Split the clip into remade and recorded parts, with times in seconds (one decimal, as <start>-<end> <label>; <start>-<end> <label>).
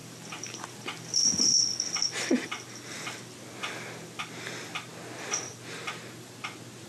0.0-6.9 recorded